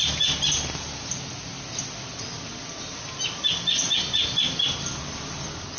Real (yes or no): yes